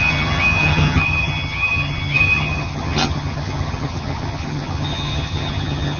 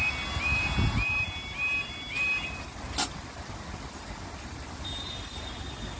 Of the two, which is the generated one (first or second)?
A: first